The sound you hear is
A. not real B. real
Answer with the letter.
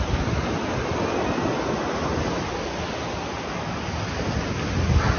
B